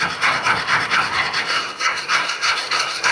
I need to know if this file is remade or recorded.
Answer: remade